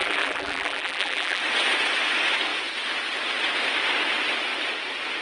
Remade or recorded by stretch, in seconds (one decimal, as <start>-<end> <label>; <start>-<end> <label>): 0.0-1.4 remade; 1.4-5.2 recorded